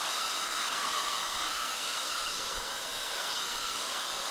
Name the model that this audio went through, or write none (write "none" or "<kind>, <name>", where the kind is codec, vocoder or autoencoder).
codec, SNAC